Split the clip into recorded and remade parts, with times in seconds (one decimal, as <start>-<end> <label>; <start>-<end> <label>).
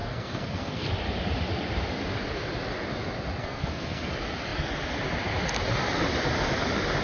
0.0-0.9 remade; 0.9-3.4 recorded; 3.4-4.1 remade; 4.1-7.0 recorded